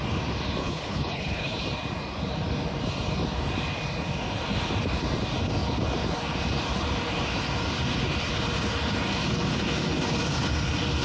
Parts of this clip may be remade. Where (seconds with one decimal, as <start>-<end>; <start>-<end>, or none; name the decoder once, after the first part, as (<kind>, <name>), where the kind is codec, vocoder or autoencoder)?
0.6-1.6 (codec, HILCodec)